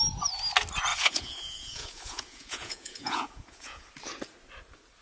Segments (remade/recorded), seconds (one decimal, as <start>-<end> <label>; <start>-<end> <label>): 0.0-0.9 recorded; 0.9-3.9 remade; 3.9-5.0 recorded